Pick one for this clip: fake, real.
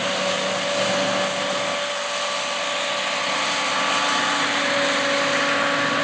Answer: real